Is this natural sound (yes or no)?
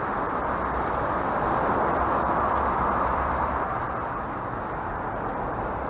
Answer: no